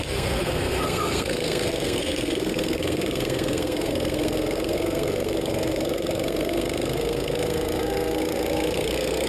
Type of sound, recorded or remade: remade